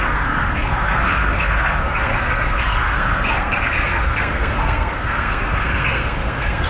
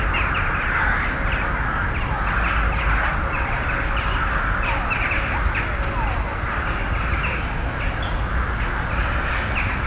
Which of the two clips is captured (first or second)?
second